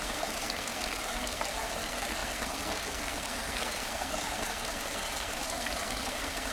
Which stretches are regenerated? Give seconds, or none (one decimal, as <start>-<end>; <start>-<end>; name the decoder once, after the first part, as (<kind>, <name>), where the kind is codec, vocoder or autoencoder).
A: 0.0-6.5 (codec, SNAC)